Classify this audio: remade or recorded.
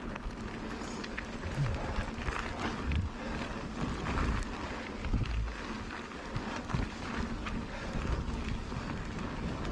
recorded